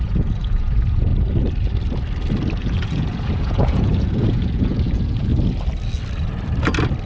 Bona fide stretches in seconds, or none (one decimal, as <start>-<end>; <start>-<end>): 1.1-2.6; 5.3-7.1